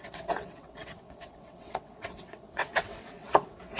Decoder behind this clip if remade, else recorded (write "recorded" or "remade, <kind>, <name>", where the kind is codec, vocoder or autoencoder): remade, vocoder, WaveNeXt